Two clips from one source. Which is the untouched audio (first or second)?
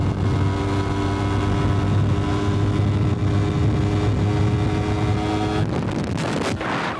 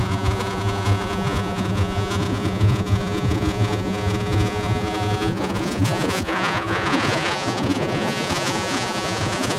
first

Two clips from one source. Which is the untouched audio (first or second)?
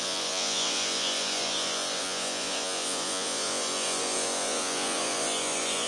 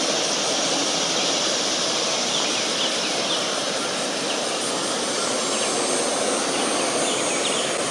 second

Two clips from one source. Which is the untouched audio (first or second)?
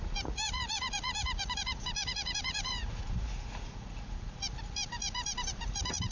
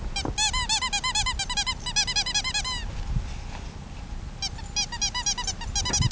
second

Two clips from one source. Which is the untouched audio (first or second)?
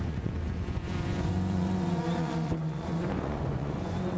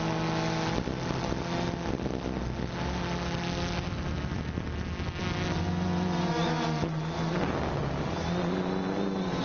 second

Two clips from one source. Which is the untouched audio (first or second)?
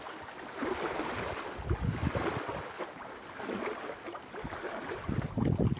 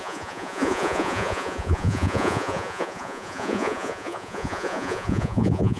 first